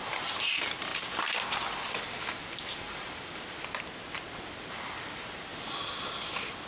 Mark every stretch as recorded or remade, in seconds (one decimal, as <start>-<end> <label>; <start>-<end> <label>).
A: 0.0-0.9 remade; 0.9-4.7 recorded; 4.7-5.5 remade; 5.5-6.7 recorded